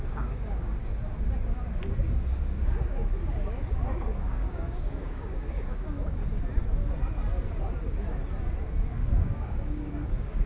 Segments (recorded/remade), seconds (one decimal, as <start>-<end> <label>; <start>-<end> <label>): 0.0-0.8 remade; 0.8-2.1 recorded; 2.1-3.2 remade; 3.2-3.9 recorded; 3.9-6.2 remade; 6.2-8.8 recorded; 8.8-10.5 remade